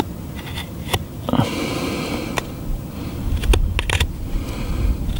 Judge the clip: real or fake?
real